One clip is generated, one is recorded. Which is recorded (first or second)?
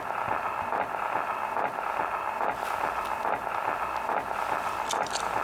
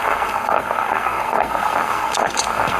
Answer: first